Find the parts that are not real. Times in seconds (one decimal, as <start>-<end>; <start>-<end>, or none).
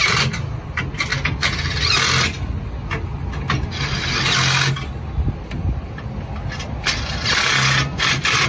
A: none